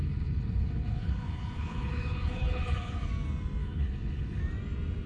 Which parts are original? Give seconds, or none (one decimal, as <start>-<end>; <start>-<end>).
3.1-3.6; 4.4-5.1